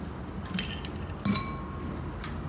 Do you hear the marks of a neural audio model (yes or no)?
no